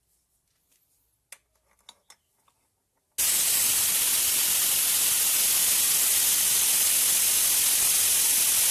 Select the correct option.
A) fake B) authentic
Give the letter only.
B